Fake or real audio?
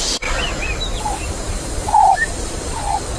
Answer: real